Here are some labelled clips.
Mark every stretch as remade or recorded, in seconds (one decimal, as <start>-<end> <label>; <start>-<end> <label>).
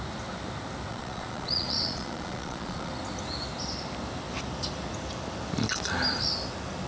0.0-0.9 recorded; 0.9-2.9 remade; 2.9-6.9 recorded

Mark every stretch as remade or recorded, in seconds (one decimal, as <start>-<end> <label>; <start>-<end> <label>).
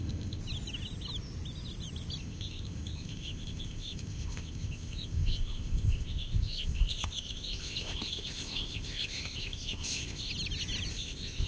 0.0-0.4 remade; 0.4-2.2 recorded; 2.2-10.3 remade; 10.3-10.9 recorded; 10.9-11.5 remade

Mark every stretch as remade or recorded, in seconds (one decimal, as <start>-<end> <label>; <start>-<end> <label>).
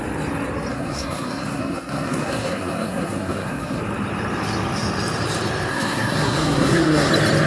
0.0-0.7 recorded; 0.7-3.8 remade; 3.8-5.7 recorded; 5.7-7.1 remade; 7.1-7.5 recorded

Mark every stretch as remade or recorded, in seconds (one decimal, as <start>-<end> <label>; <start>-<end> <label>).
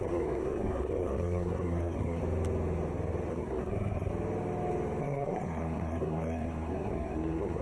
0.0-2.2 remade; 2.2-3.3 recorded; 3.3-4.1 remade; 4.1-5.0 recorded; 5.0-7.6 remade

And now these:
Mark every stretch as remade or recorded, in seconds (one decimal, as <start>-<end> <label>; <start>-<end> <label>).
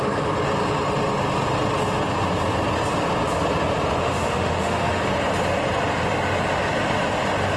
0.0-4.0 recorded; 4.0-5.0 remade; 5.0-7.6 recorded